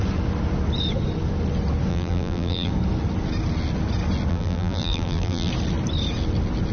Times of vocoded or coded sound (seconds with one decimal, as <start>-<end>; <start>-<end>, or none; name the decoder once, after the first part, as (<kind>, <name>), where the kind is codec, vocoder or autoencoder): 1.9-2.7 (vocoder, BigVGAN v2); 4.3-5.5